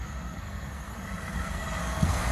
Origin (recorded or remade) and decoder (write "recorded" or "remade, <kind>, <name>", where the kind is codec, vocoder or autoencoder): remade, codec, SNAC